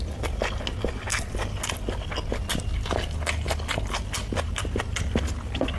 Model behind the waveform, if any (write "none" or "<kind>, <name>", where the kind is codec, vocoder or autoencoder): none